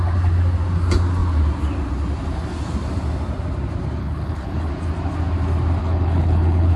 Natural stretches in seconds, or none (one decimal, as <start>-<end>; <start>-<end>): 0.0-4.0; 4.7-5.8